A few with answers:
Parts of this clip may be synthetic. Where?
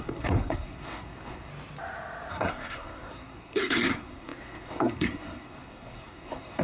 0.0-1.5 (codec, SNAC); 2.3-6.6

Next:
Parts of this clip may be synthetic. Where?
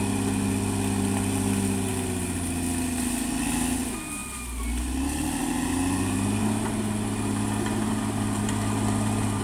none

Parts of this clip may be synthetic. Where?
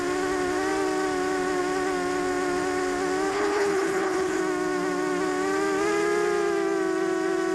3.3-4.4 (codec, HILCodec)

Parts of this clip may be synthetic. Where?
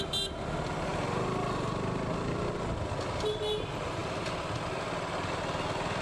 none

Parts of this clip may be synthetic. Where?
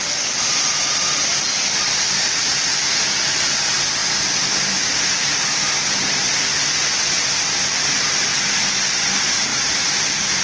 1.3-1.9 (vocoder, BigVGAN v2); 9.5-10.4